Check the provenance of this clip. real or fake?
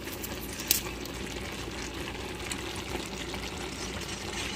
real